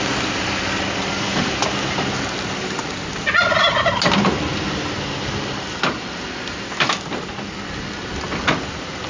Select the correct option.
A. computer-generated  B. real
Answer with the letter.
B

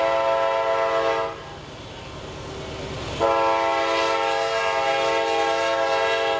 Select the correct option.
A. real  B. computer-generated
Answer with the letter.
A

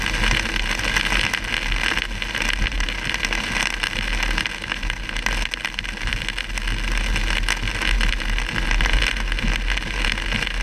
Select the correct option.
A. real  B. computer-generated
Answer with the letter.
A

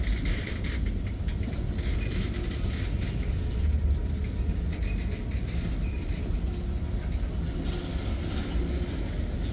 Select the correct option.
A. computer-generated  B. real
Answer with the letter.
B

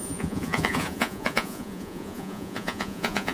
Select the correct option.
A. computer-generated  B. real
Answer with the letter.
A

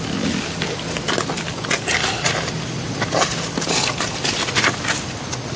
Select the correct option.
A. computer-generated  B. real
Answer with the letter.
B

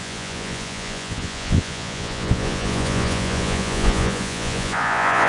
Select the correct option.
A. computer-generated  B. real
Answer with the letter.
A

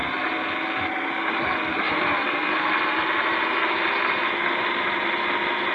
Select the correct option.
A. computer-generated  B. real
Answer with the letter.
B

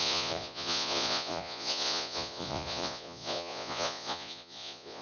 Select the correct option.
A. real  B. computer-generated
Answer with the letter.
B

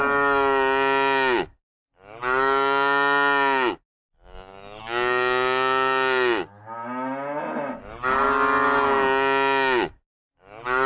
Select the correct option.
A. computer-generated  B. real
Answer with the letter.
B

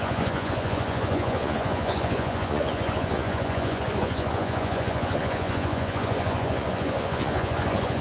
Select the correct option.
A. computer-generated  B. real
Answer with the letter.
A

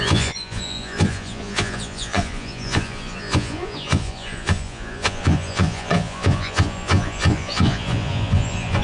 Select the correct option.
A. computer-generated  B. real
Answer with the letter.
A